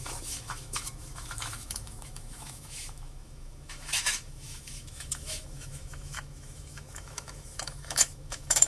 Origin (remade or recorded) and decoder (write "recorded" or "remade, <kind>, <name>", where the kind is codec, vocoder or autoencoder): remade, autoencoder, DAC-VAE